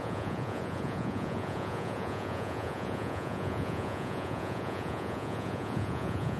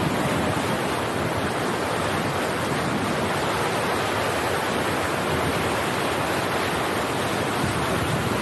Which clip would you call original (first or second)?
second